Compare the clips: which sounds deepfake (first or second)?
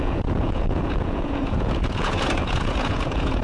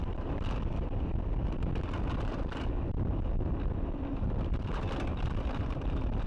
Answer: first